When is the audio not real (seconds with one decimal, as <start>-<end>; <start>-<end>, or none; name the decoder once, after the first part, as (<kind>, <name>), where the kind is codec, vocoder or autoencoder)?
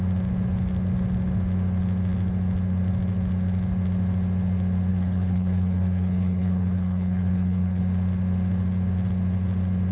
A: 4.9-7.8 (codec, HILCodec)